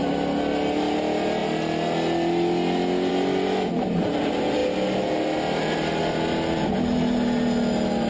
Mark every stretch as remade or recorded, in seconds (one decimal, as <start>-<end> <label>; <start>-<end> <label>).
0.0-8.1 recorded

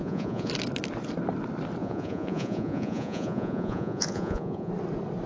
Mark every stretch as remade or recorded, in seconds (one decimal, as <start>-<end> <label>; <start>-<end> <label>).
0.0-0.5 remade; 0.5-1.8 recorded; 1.8-4.7 remade; 4.7-5.3 recorded

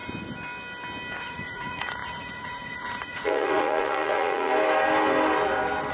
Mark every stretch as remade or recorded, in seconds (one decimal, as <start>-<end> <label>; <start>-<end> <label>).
0.0-1.2 recorded; 1.2-4.5 remade; 4.5-5.9 recorded